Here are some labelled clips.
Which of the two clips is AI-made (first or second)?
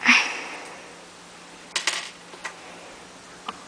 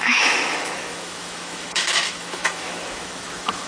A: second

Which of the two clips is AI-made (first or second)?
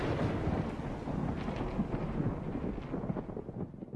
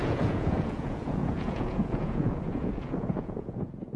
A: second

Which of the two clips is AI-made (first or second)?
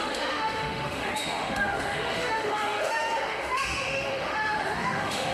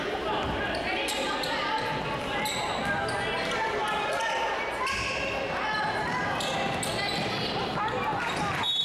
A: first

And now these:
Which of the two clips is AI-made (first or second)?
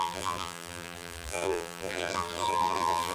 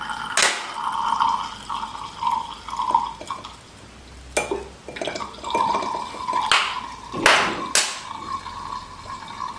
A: first